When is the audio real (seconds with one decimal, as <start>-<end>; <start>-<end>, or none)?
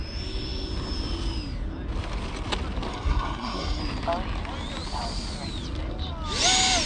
0.0-2.9; 3.8-6.9